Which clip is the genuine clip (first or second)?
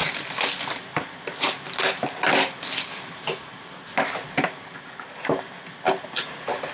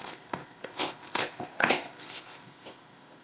first